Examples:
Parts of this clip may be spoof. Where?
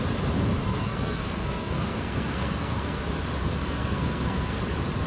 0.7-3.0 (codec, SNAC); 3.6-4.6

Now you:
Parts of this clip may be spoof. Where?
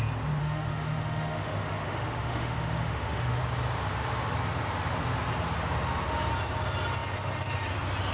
0.4-3.4 (autoencoder, DAC-VAE)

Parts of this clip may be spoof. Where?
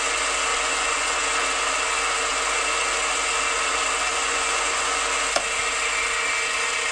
0.5-1.2 (vocoder, Vocos); 4.1-5.0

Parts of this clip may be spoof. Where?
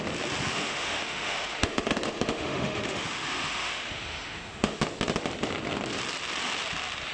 0.5-4.8 (autoencoder, DAC-VAE)